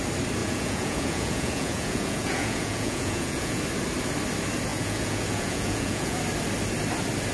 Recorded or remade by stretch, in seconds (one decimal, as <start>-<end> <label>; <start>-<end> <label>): 0.0-0.4 recorded; 0.4-3.6 remade; 3.6-4.7 recorded; 4.7-6.2 remade; 6.2-7.3 recorded